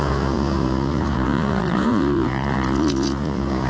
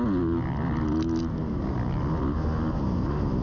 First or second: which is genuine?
second